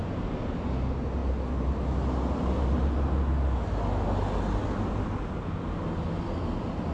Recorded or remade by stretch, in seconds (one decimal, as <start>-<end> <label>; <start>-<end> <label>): 0.0-6.9 recorded